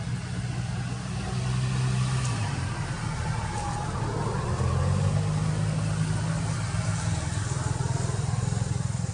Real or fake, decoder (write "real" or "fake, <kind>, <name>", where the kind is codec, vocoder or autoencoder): real